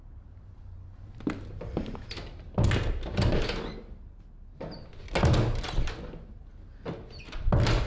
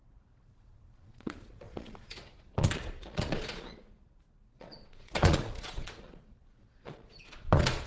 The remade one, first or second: second